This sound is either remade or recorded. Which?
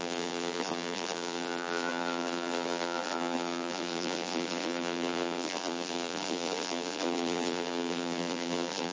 remade